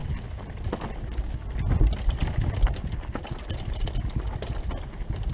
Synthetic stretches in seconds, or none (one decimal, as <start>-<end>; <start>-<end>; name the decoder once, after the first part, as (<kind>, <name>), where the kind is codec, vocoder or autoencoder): none